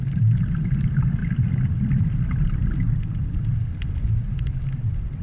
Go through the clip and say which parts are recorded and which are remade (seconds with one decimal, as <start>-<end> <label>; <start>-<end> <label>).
0.0-5.2 recorded